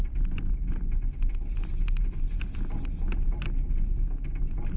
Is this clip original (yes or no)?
yes